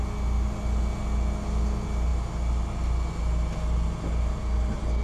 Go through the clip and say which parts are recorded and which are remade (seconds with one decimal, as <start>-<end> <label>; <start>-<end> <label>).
0.0-5.0 recorded